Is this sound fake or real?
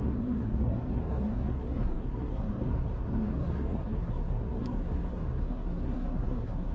fake